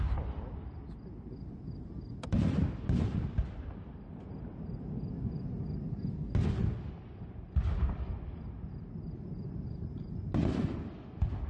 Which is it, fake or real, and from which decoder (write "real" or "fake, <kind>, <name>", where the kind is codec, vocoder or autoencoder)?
real